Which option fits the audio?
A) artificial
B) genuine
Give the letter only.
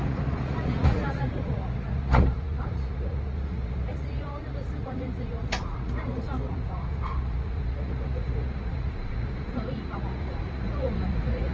A